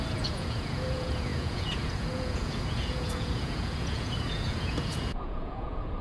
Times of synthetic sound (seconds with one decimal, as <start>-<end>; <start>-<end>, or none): 0.0-6.0